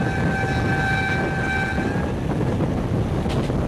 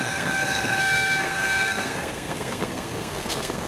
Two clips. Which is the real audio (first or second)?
first